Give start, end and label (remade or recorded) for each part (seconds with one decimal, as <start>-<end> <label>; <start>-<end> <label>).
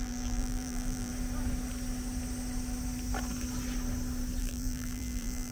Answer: 0.0-1.1 remade; 1.1-4.4 recorded; 4.4-5.5 remade